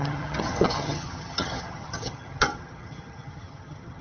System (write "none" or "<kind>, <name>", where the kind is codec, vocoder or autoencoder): vocoder, HiFi-GAN